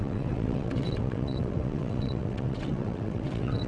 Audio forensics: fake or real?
fake